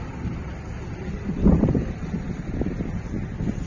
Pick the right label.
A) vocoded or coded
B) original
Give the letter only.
B